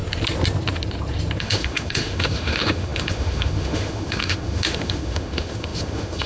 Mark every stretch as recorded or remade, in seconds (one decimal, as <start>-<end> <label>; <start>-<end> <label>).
0.0-1.4 recorded; 1.4-6.3 remade